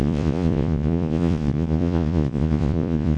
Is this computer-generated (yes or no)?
yes